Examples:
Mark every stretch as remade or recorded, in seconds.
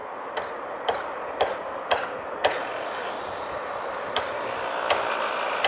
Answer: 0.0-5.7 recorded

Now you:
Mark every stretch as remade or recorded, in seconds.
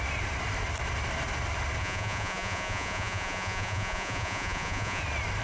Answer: 0.0-1.8 recorded; 1.8-5.0 remade; 5.0-5.4 recorded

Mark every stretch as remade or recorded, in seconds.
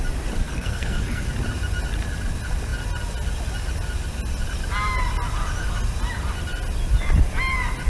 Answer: 0.0-0.4 recorded; 0.4-1.3 remade; 1.3-7.9 recorded